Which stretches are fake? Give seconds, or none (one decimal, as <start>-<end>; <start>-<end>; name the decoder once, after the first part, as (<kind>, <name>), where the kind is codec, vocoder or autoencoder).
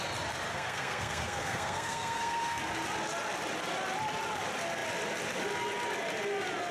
0.5-2.6 (codec, SNAC)